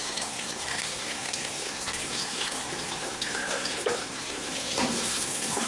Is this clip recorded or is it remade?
remade